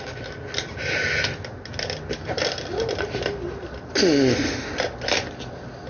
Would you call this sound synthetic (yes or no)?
no